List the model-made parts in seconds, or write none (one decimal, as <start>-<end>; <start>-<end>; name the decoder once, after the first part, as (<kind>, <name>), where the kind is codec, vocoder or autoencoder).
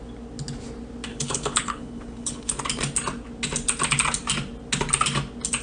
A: 1.1-2.6 (codec, HILCodec)